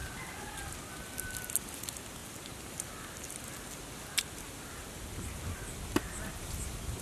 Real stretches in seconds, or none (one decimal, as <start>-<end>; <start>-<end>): 0.0-7.0